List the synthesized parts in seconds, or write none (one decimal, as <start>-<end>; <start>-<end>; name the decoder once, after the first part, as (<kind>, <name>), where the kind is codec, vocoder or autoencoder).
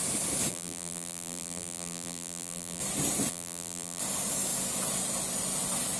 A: 0.5-2.8 (vocoder, BigVGAN v2); 3.3-4.0